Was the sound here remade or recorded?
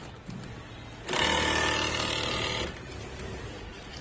recorded